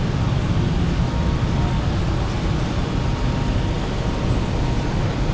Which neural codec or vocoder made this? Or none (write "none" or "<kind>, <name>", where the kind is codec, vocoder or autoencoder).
none